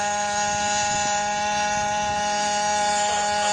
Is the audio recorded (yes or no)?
yes